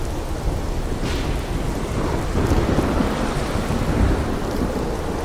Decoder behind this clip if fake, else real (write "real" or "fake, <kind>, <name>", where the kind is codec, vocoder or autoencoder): real